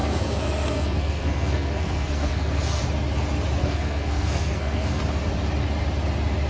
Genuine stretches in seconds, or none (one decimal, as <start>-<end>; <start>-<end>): 2.8-3.6; 5.0-6.5